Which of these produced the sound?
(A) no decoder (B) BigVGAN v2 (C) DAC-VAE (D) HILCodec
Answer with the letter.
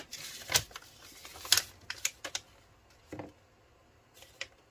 A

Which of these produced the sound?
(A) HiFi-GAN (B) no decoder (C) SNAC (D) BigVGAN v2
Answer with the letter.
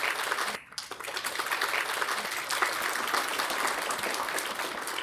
B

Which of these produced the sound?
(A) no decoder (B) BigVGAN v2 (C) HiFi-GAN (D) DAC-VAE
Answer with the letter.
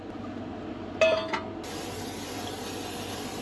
A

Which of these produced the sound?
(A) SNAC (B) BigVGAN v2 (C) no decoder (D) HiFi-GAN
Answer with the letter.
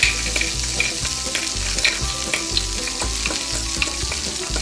C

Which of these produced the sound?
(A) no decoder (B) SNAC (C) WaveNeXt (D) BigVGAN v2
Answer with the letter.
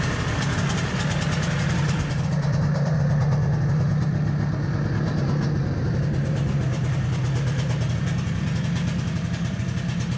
D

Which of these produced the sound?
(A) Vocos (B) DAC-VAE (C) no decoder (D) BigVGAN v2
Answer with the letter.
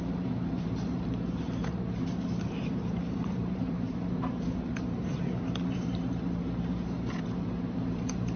D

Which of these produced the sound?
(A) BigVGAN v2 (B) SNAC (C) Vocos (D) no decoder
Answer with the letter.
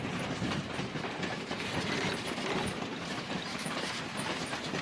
A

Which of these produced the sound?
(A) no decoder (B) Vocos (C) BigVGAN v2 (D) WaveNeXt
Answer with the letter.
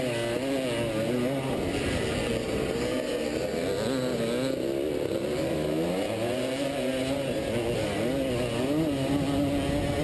A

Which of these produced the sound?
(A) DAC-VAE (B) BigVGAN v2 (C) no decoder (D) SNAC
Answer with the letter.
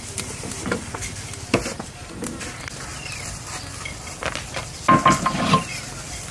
C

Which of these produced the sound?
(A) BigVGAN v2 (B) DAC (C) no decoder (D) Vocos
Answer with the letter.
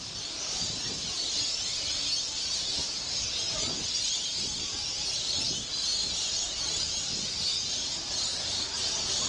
A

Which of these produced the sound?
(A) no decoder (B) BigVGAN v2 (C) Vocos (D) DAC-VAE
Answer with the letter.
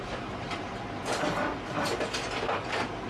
B